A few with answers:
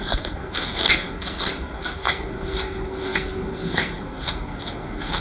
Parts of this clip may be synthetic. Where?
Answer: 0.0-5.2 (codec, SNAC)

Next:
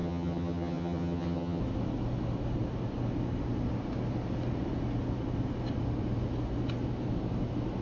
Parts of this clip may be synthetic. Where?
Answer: 0.0-1.6 (vocoder, HiFi-GAN)

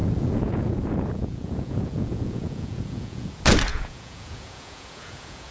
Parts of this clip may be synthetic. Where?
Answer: 0.0-3.3 (vocoder, Vocos); 3.7-5.5

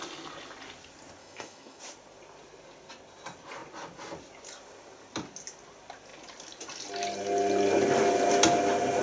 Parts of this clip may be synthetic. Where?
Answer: 1.2-1.8 (autoencoder, DAC-VAE)